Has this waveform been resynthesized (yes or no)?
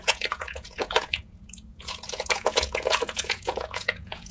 yes